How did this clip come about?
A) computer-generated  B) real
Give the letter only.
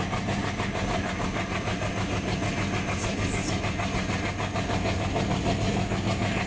B